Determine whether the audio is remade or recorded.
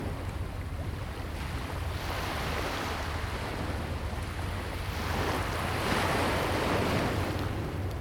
recorded